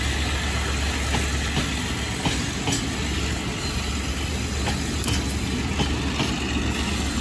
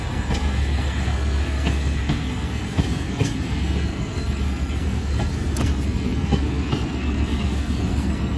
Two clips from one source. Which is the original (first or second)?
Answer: first